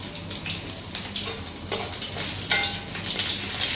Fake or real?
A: real